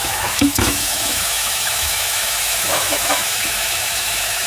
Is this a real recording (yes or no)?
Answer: no